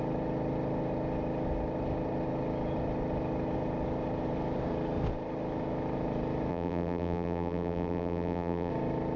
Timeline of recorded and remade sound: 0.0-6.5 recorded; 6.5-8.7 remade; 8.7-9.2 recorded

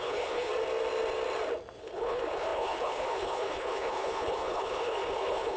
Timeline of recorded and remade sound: 0.0-0.5 remade; 0.5-1.8 recorded; 1.8-5.6 remade

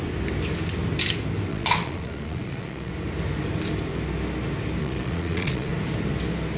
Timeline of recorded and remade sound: 0.0-1.5 recorded; 1.5-2.9 remade; 2.9-4.8 recorded; 4.8-5.7 remade; 5.7-6.6 recorded

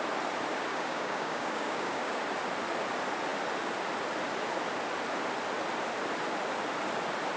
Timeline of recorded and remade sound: 0.0-0.7 recorded; 0.7-2.2 remade; 2.2-7.4 recorded

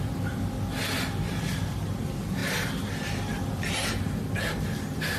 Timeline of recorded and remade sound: 0.0-5.2 recorded

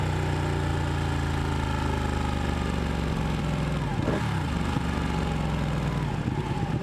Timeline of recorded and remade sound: 0.0-6.8 recorded